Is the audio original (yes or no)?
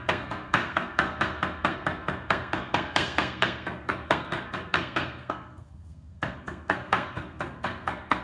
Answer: no